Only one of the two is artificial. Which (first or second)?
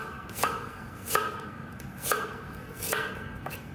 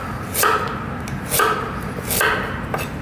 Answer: first